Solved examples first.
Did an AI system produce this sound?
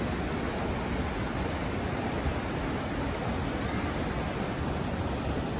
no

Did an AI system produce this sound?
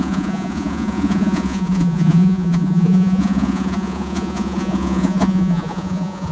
yes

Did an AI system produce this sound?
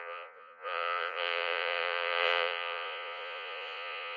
yes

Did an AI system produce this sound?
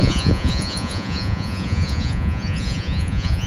yes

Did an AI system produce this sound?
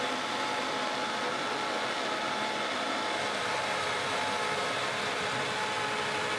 no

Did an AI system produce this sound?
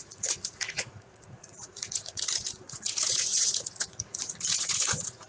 yes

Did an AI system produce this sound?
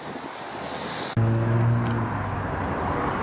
no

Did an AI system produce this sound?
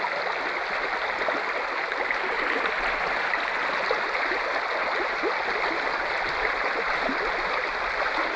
no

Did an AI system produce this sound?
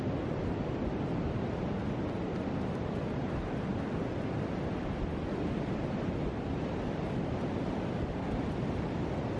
no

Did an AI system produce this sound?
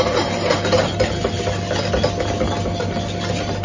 no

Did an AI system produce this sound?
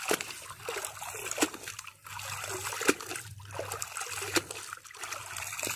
no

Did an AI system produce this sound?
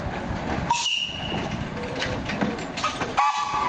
no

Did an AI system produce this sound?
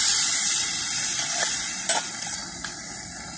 no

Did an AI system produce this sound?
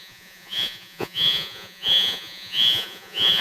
yes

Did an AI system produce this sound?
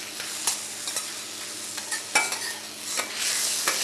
no